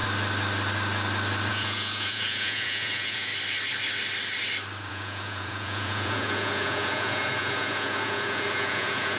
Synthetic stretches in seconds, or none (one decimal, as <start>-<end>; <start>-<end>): 1.5-3.3; 4.9-9.2